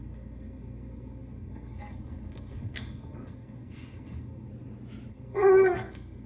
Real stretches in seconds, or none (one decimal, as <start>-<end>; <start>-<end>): 4.5-5.1